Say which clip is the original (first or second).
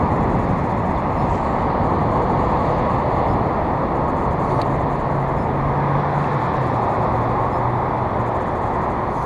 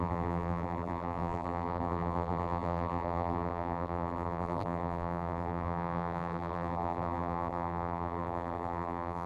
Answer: first